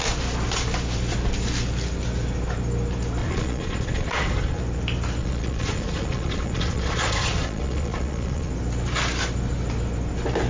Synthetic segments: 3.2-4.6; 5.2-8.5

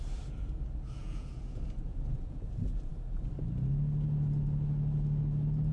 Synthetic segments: 1.0-2.9